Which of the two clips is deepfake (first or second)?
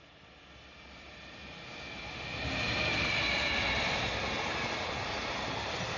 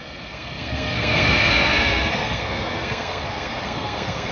second